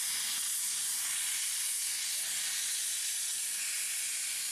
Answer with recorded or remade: recorded